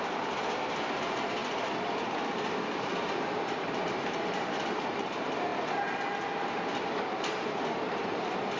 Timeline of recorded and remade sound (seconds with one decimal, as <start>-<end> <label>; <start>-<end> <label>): 0.0-1.4 remade; 1.4-2.8 recorded; 2.8-5.5 remade; 5.5-7.1 recorded; 7.1-8.6 remade